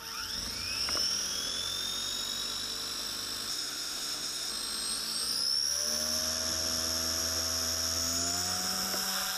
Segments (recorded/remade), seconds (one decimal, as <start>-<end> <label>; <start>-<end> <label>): 0.0-3.5 recorded; 3.5-4.5 remade; 4.5-9.4 recorded